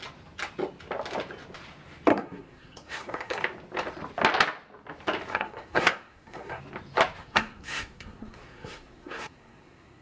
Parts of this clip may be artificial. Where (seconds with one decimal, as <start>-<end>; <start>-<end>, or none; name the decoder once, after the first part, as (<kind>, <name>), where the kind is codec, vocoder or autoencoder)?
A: 2.1-3.4 (codec, SNAC); 5.3-6.6; 7.2-10.0

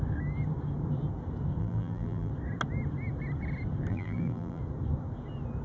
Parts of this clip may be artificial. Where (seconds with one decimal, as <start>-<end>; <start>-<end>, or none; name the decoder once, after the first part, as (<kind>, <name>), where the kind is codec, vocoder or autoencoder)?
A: 1.6-2.3 (vocoder, BigVGAN v2); 3.9-4.6